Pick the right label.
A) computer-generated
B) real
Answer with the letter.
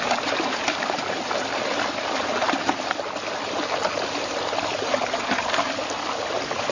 B